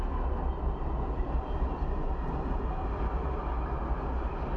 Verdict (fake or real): real